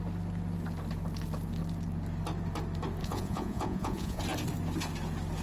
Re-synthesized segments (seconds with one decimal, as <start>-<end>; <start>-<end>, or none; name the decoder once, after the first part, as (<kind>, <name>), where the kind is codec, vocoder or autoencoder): 3.0-4.2 (vocoder, Vocos)